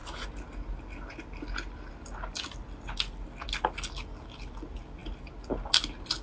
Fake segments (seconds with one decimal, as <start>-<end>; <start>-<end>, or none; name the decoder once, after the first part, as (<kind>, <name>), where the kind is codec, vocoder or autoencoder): none